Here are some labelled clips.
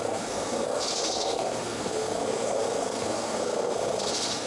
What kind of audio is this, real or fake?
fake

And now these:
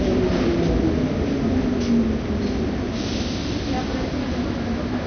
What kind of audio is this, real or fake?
real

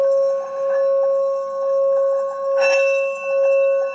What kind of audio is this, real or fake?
real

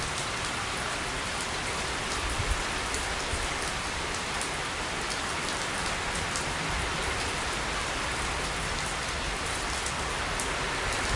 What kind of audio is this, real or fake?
real